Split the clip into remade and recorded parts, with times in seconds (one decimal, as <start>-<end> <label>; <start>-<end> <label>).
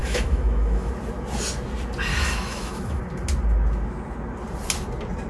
0.0-0.9 remade; 0.9-2.1 recorded; 2.1-3.0 remade; 3.0-5.3 recorded